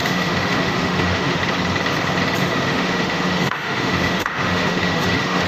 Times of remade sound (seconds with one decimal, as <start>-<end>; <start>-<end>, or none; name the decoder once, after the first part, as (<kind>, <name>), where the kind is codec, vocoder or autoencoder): 0.0-1.4 (autoencoder, DAC-VAE); 2.4-5.5